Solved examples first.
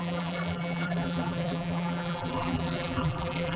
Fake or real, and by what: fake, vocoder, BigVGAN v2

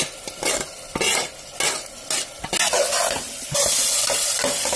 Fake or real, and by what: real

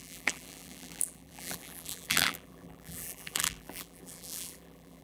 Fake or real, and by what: fake, vocoder, BigVGAN v2